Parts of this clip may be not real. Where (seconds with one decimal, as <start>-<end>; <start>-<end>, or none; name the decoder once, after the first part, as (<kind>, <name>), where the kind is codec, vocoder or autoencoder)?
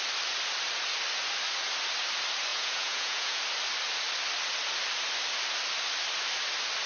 2.5-3.4 (vocoder, Vocos)